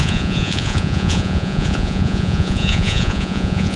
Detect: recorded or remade remade